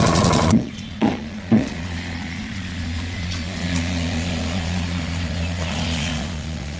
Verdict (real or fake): fake